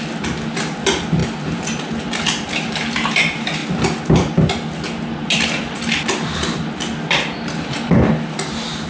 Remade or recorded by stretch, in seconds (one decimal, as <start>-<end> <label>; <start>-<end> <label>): 0.0-8.9 recorded

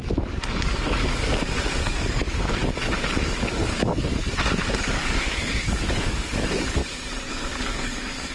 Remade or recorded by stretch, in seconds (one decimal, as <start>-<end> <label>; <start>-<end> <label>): 0.0-6.8 remade; 6.8-7.3 recorded; 7.3-8.3 remade

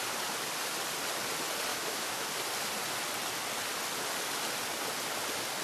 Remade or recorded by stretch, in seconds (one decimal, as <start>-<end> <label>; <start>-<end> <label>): 0.0-1.7 recorded; 1.7-2.3 remade; 2.3-5.6 recorded

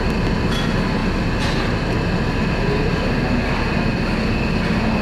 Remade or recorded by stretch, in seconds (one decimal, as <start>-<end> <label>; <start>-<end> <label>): 0.0-5.0 recorded

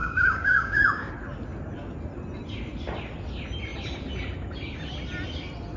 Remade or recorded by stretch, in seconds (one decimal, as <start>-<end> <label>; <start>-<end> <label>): 0.0-1.1 remade; 1.1-5.8 recorded

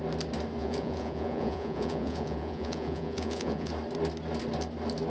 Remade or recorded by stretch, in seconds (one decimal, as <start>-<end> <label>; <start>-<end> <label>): 0.0-0.6 recorded; 0.6-3.7 remade; 3.7-5.1 recorded